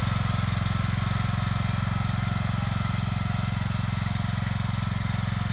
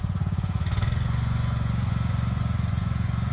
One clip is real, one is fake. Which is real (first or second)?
first